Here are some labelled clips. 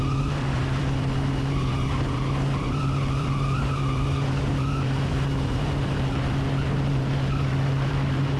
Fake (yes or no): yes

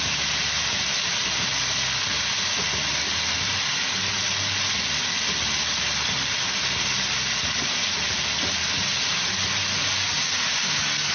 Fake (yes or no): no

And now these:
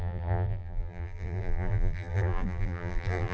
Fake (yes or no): yes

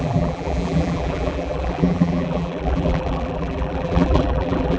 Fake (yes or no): yes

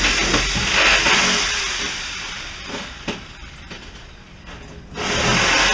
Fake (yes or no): no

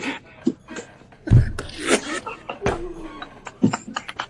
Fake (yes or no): no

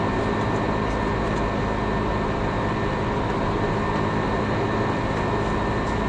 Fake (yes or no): no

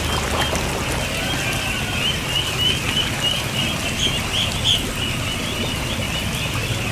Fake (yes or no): no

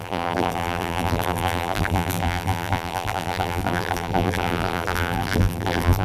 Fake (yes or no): yes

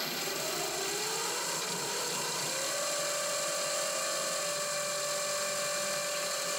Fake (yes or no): no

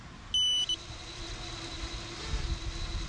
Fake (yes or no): no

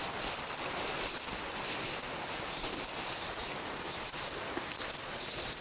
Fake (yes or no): no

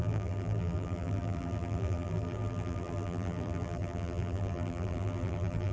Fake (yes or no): yes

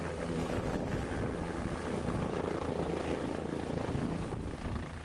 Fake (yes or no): no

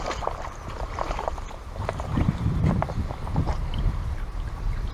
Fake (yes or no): yes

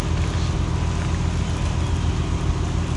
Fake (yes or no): no